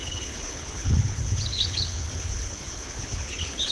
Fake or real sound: fake